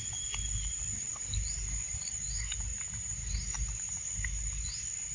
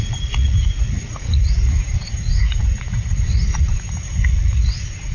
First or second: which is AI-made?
second